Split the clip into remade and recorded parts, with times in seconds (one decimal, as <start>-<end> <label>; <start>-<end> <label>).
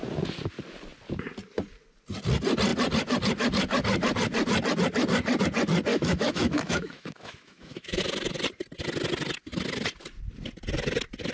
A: 0.0-5.9 recorded; 5.9-8.0 remade; 8.0-11.3 recorded